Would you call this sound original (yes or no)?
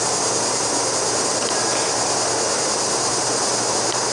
yes